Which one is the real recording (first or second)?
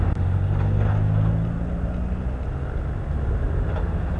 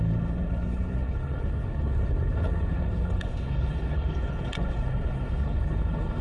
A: first